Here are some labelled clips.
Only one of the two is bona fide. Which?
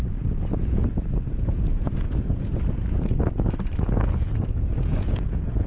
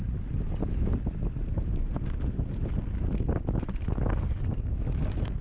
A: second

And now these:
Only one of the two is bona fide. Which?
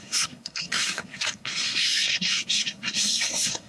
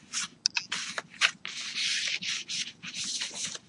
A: second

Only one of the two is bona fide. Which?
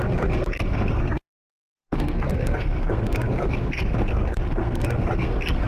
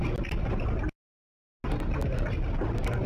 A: second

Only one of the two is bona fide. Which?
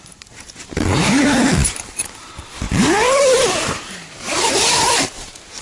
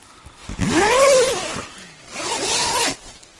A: second